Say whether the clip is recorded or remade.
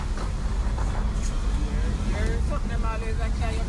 recorded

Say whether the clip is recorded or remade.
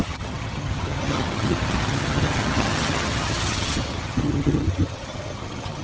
remade